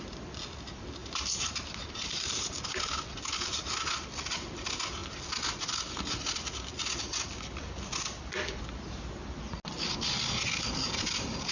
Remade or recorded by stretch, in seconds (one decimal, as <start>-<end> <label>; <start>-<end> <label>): 0.0-1.0 recorded; 1.0-2.8 remade; 2.8-11.5 recorded